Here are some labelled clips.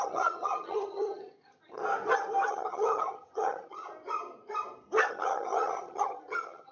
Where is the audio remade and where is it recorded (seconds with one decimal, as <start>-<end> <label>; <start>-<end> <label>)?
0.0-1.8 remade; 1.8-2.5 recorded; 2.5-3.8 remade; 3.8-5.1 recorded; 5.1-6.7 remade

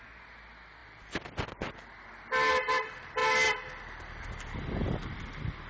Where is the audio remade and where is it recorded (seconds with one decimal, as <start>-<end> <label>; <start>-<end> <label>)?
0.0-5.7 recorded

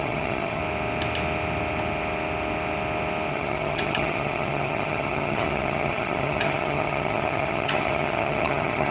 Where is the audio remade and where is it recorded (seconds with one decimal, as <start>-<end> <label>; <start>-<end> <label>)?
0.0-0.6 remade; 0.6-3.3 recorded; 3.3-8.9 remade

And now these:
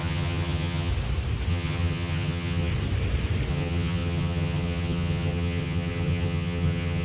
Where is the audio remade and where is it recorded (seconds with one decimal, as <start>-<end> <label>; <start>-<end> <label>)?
0.0-0.9 remade; 0.9-1.5 recorded; 1.5-2.7 remade; 2.7-3.5 recorded; 3.5-7.0 remade